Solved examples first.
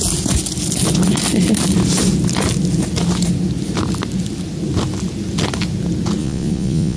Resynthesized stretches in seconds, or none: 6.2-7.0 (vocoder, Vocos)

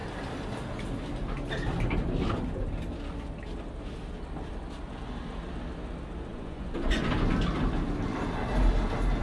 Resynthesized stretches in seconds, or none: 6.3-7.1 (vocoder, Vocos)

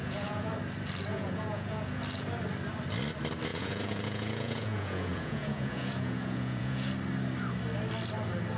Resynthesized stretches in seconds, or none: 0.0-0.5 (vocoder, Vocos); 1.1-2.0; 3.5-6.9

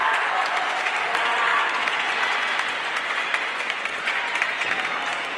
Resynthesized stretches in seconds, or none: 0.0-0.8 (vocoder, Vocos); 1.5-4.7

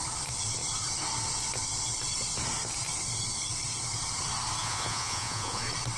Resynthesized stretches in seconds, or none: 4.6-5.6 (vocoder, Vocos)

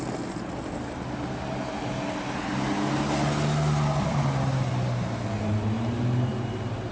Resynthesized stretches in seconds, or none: none

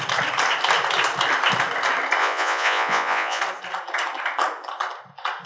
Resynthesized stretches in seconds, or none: 2.2-3.4 (vocoder, Vocos)